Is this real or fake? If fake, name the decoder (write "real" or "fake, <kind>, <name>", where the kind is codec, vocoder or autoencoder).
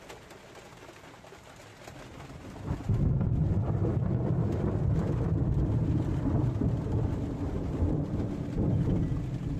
real